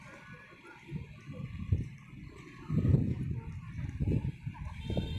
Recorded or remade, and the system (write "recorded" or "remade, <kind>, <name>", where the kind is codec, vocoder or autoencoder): recorded